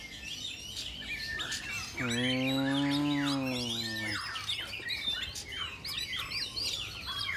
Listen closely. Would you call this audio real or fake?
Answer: real